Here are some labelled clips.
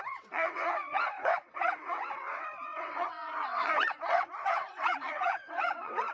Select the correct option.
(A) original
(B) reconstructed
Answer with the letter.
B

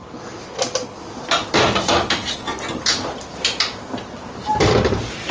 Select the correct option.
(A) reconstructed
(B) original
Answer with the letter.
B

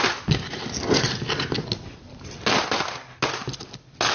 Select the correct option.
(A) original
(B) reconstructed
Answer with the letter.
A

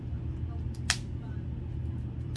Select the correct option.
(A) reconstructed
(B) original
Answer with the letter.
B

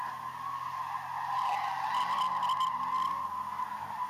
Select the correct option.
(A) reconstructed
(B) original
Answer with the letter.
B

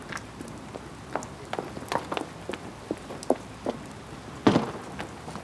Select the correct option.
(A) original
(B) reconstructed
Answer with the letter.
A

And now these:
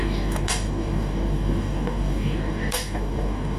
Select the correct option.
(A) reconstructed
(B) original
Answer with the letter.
A